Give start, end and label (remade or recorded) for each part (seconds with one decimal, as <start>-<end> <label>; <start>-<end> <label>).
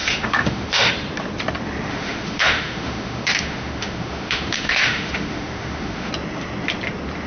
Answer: 0.0-0.9 remade; 0.9-1.9 recorded; 1.9-6.1 remade; 6.1-7.3 recorded